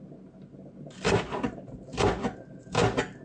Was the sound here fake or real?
real